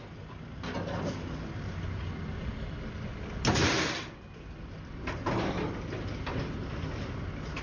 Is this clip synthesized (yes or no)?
no